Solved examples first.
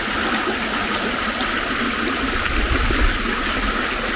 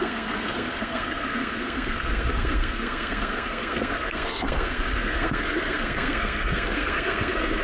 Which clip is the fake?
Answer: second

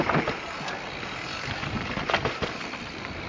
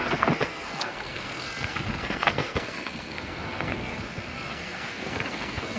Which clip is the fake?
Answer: second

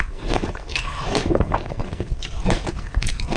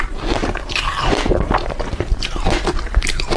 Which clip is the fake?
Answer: first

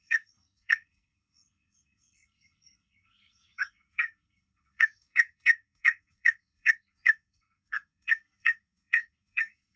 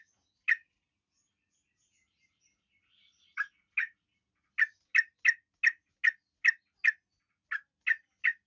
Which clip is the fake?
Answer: first